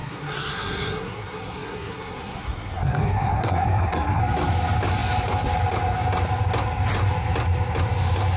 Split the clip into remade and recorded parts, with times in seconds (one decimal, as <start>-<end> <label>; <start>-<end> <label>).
0.0-4.2 remade; 4.2-8.4 recorded